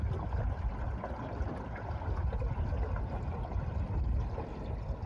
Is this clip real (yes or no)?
yes